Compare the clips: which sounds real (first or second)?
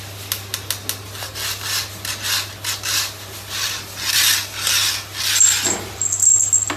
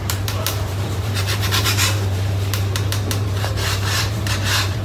first